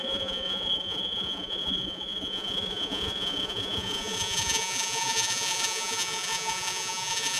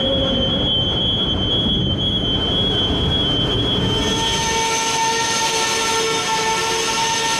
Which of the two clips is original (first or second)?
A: second